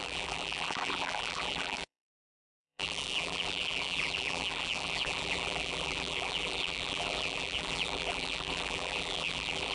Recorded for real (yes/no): no